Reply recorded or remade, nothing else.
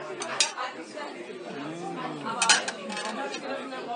recorded